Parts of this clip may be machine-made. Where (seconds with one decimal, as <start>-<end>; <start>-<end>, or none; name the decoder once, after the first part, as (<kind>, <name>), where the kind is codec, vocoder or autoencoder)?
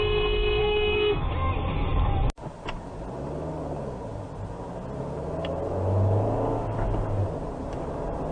0.6-1.3 (codec, SNAC)